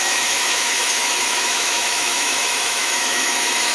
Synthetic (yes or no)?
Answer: yes